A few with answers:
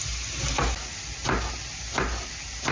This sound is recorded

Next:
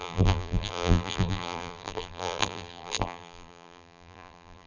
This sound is remade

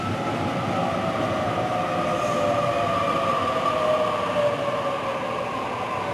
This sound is recorded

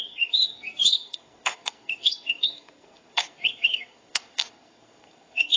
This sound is remade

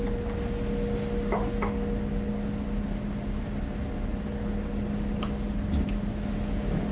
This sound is recorded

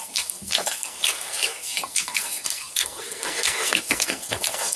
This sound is remade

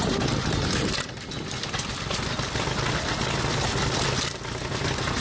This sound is recorded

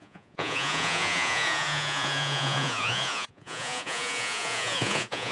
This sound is remade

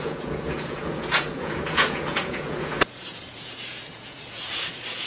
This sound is remade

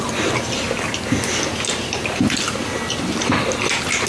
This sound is recorded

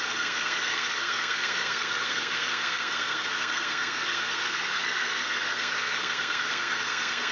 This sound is remade